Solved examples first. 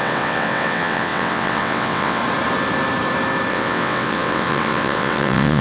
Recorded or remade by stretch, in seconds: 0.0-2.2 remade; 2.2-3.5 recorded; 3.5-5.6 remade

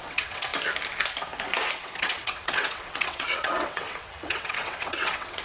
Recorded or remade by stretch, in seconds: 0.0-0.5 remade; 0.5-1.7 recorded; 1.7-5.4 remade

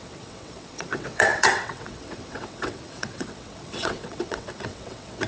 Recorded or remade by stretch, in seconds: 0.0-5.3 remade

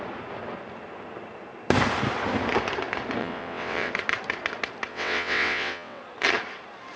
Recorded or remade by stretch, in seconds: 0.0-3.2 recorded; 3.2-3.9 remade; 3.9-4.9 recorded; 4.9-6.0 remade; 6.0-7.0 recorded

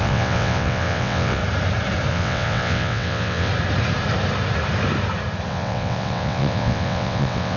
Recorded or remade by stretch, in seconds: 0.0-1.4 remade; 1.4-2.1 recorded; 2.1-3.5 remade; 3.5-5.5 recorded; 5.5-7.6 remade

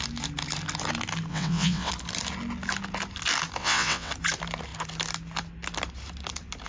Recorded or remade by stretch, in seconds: 0.0-1.3 recorded; 1.3-1.9 remade; 1.9-3.6 recorded; 3.6-4.1 remade; 4.1-6.7 recorded

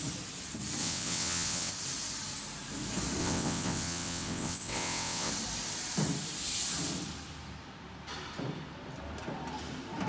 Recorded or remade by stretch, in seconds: 0.0-0.8 recorded; 0.8-1.7 remade; 1.7-3.2 recorded; 3.2-5.3 remade; 5.3-10.1 recorded

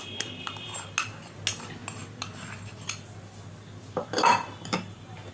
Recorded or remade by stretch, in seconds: 0.0-5.3 recorded